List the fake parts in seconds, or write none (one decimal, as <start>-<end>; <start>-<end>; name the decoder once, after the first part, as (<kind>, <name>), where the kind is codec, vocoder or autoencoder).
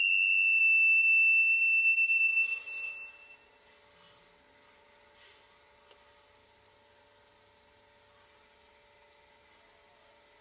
0.6-3.1 (vocoder, BigVGAN v2)